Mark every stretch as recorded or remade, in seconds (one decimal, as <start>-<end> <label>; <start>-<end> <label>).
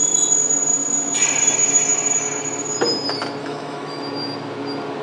0.0-3.4 recorded; 3.4-4.0 remade; 4.0-5.0 recorded